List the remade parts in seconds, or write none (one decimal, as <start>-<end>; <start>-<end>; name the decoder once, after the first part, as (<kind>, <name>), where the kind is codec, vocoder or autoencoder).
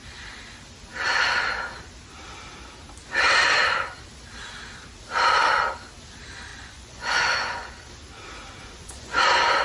6.5-7.7 (vocoder, Vocos); 8.6-9.2